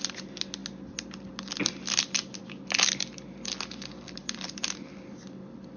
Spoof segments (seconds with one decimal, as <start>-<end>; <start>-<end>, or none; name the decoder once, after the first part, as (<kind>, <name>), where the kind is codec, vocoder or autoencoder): 4.2-5.8 (vocoder, BigVGAN v2)